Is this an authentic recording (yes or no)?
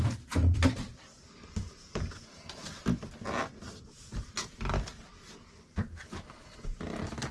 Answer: yes